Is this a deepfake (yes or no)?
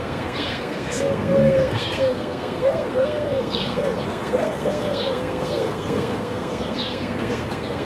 yes